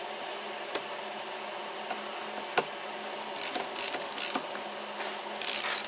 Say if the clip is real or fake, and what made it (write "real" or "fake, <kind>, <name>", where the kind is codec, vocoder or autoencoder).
real